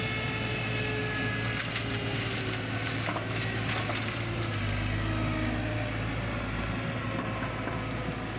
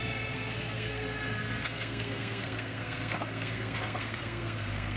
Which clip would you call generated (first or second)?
second